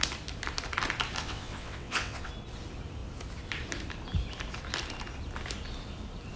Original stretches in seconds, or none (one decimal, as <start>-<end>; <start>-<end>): 0.0-1.2; 2.3-6.4